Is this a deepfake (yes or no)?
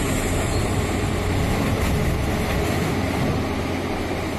no